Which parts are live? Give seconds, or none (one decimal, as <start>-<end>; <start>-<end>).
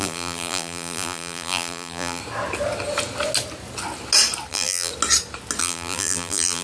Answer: 2.2-4.5; 4.9-5.6